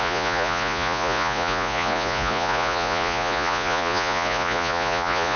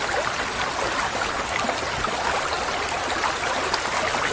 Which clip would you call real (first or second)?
second